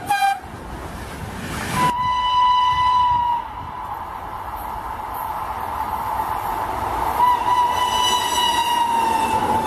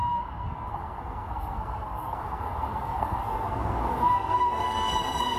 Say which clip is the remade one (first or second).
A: second